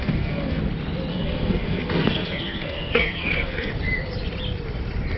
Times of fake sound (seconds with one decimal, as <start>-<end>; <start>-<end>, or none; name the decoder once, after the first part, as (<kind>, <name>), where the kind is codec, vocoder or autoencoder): 0.0-0.6 (codec, SNAC); 1.1-3.7